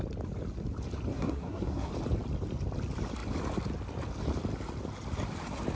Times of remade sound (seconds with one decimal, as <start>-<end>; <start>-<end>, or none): 1.1-1.9